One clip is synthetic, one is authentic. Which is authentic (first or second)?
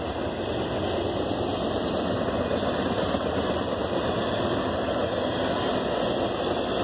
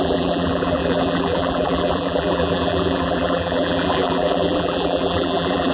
first